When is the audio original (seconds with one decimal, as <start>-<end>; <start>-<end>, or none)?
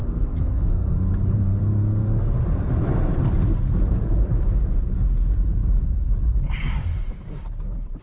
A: 4.4-5.6